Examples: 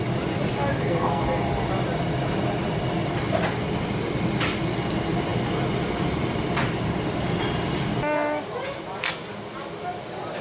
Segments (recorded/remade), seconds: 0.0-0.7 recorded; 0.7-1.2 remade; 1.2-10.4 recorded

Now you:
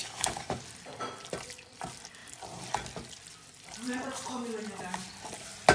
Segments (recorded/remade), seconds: 0.0-0.6 remade; 0.6-5.7 recorded

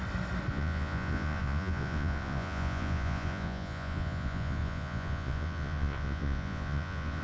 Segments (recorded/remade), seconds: 0.0-0.5 recorded; 0.5-7.2 remade

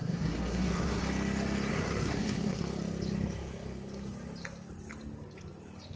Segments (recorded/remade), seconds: 0.0-1.0 remade; 1.0-1.7 recorded; 1.7-2.6 remade; 2.6-6.0 recorded

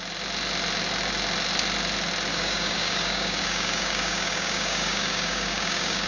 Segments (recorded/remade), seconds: 0.0-2.3 recorded; 2.3-6.1 remade

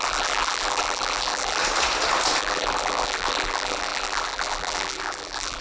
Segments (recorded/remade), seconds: 0.0-1.6 remade; 1.6-2.4 recorded; 2.4-5.6 remade

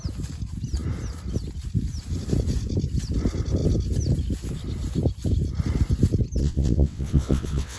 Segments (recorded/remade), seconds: 0.0-6.4 recorded; 6.4-7.8 remade